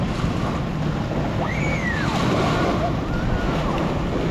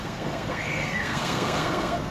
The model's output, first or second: second